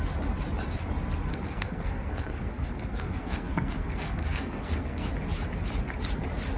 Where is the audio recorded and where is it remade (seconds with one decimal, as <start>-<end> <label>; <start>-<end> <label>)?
0.0-1.3 recorded; 1.3-5.1 remade; 5.1-6.6 recorded